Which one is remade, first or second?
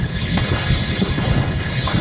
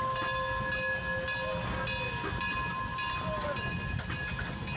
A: first